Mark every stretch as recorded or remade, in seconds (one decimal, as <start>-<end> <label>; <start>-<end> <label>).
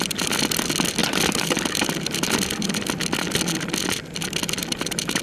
0.0-1.0 recorded; 1.0-2.9 remade; 2.9-4.6 recorded; 4.6-5.2 remade